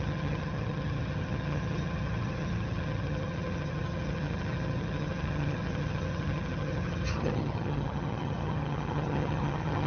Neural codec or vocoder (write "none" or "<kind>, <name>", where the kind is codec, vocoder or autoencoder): vocoder, HiFi-GAN